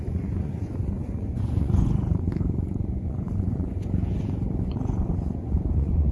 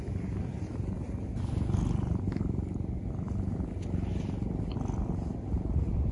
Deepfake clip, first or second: first